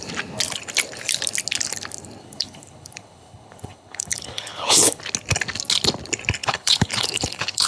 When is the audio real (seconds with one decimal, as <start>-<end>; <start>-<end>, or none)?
0.0-2.2; 5.0-6.4